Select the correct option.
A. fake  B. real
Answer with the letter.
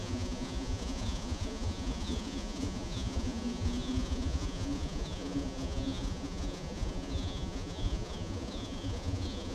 A